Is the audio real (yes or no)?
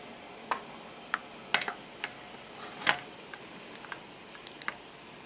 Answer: yes